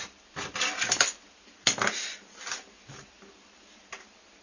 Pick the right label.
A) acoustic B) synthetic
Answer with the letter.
A